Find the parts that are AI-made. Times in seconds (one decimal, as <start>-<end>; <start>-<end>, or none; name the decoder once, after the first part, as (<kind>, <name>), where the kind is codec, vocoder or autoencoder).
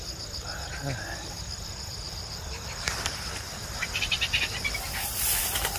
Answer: 1.6-5.1 (vocoder, BigVGAN v2)